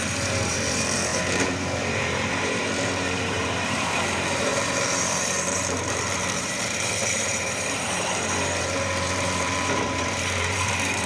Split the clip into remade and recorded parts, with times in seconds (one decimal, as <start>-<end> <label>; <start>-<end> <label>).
0.0-11.1 remade